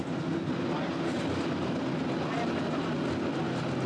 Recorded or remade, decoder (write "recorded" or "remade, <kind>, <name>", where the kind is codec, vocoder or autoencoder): recorded